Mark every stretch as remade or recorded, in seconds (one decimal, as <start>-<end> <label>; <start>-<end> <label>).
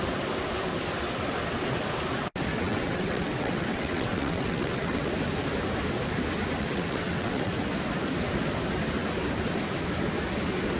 0.0-2.5 recorded; 2.5-5.1 remade; 5.1-6.6 recorded; 6.6-7.5 remade; 7.5-10.8 recorded